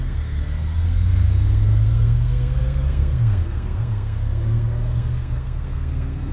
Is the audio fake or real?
fake